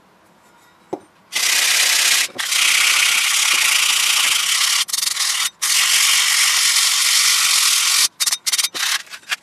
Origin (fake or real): real